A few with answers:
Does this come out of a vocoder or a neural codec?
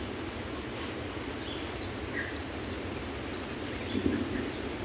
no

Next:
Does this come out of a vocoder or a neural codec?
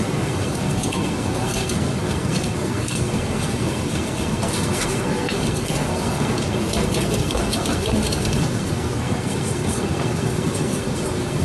yes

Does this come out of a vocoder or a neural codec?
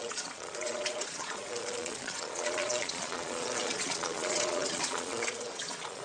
yes